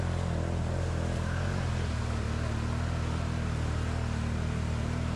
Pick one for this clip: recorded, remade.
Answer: recorded